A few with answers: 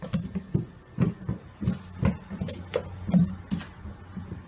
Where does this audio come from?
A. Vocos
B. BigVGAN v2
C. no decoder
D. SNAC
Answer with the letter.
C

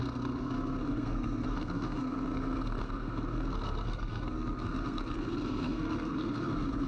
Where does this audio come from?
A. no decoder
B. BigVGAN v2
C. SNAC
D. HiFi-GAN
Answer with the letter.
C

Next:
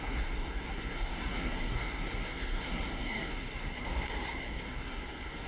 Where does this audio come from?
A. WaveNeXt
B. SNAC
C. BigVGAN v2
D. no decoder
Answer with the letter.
B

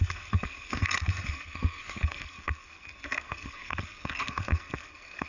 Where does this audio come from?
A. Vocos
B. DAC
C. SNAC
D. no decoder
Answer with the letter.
C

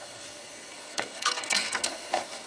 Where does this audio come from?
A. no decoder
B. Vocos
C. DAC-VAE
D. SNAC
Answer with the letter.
D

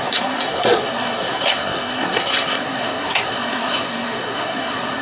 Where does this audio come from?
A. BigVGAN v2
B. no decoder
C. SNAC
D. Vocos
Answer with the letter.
C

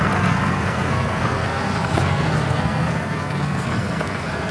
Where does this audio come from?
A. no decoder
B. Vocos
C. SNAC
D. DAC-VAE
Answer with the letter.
C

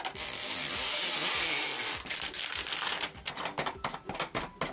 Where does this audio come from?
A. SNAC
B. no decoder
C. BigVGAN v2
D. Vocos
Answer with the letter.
B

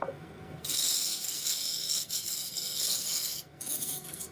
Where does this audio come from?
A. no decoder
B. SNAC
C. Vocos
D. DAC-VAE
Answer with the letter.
B